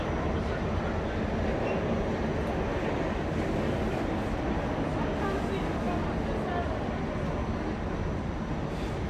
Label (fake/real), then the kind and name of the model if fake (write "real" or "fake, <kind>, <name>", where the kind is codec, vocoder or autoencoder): real